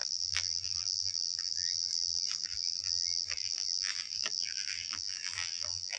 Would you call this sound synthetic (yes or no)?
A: yes